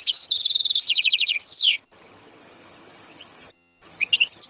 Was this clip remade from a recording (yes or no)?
yes